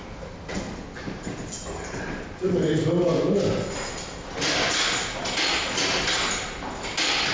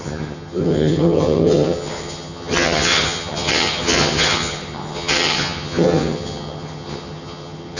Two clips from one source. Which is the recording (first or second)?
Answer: first